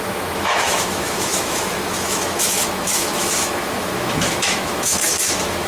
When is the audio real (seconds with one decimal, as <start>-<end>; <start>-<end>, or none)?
none